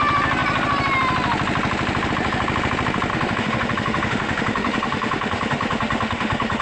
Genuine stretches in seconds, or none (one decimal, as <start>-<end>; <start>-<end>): 0.0-3.1